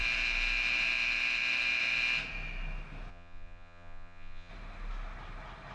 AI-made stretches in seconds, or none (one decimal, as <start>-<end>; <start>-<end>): 3.1-4.5